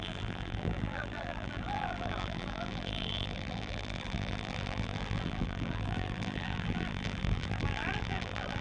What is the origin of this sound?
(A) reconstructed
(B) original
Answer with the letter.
A